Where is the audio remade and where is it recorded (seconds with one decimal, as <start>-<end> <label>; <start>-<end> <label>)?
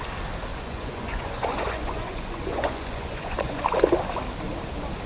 0.0-0.5 recorded; 0.5-3.6 remade; 3.6-5.1 recorded